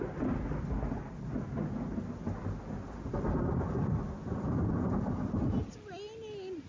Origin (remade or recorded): recorded